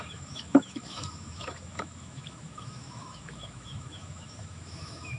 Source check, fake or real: fake